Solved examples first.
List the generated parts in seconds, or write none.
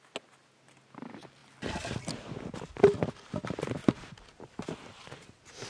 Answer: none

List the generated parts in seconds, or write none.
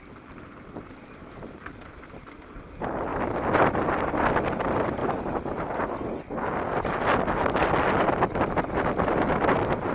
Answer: none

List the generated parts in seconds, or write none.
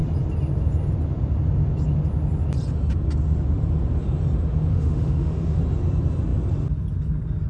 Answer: 4.7-5.6 (autoencoder, DAC-VAE)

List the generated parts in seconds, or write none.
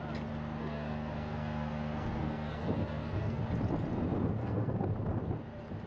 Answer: 0.6-3.4 (codec, SNAC); 4.4-4.9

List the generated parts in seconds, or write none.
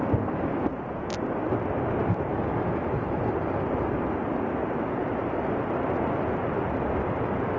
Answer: 2.3-3.2 (autoencoder, DAC-VAE)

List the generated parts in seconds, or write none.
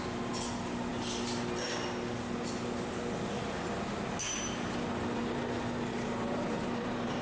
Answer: none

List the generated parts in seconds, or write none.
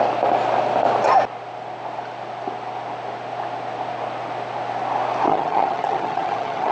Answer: 5.3-6.7 (vocoder, HiFi-GAN)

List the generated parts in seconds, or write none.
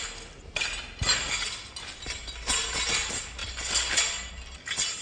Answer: none